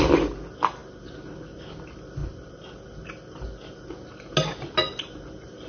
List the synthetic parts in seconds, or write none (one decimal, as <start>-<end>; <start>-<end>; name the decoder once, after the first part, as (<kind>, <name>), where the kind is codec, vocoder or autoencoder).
none